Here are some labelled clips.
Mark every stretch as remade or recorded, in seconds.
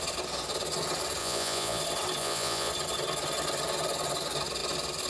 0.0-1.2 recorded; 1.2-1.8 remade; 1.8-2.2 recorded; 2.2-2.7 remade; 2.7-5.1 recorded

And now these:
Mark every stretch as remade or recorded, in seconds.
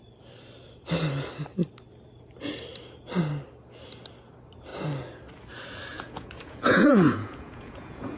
0.0-5.9 recorded; 5.9-8.2 remade